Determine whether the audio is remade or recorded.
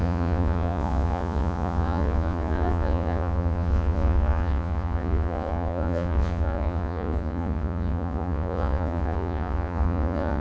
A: remade